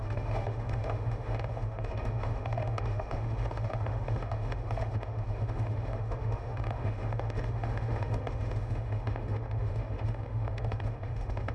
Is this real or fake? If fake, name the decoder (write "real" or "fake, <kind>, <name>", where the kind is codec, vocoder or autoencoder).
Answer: fake, autoencoder, DAC-VAE